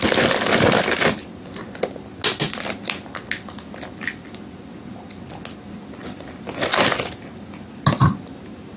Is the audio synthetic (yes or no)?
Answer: no